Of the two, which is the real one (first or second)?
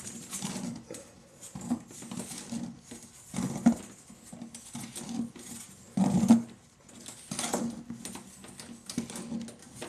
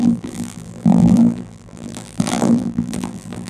first